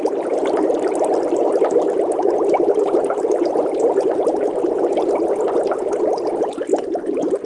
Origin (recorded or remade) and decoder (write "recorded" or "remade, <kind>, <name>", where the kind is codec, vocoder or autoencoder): recorded